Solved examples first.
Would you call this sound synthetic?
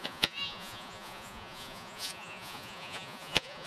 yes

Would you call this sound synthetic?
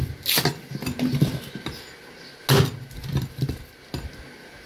no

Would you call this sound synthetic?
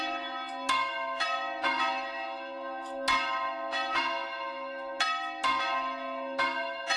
no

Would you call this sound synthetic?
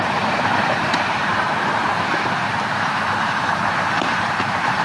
yes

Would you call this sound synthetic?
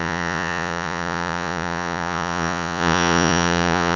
yes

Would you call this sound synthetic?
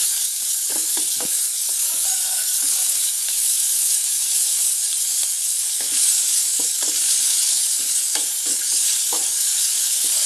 yes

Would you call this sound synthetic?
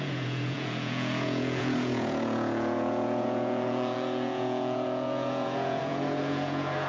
yes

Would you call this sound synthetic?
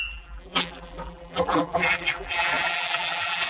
yes